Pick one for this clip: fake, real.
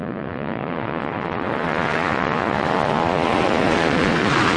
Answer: fake